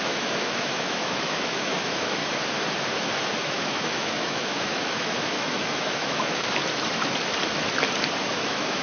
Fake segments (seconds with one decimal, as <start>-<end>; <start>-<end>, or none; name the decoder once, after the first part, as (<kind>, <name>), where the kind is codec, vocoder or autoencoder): 0.0-2.2 (autoencoder, DAC-VAE); 3.4-6.6; 8.2-8.8